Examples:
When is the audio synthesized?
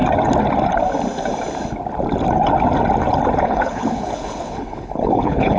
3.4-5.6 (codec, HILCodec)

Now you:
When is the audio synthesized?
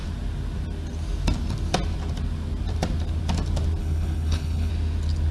3.8-4.7 (codec, HILCodec)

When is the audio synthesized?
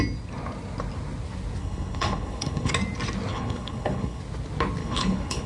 1.6-2.7 (codec, HILCodec); 3.3-4.2; 4.8-5.5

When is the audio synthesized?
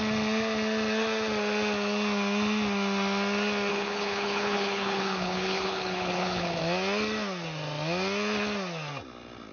3.7-6.6 (codec, HILCodec)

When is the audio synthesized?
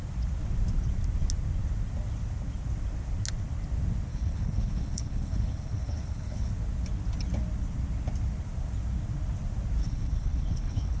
4.1-6.5 (codec, HILCodec); 9.8-11.0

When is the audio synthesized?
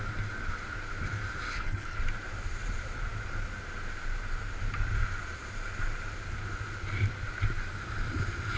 1.5-2.0 (codec, HILCodec)